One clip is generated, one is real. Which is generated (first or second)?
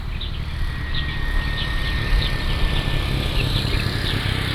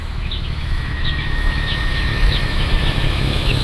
second